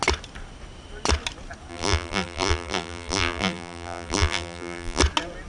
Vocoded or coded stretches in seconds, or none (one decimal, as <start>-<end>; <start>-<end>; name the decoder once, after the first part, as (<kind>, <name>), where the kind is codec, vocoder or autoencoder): 1.7-5.0 (vocoder, BigVGAN v2)